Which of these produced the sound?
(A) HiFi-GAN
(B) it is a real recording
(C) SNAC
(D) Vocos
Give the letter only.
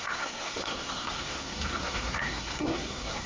C